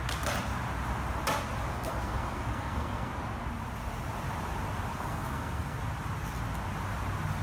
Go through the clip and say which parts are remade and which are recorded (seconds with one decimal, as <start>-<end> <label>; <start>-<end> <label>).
0.0-1.7 recorded; 1.7-3.1 remade; 3.1-4.9 recorded; 4.9-5.8 remade; 5.8-7.4 recorded